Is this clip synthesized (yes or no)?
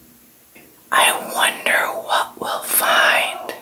no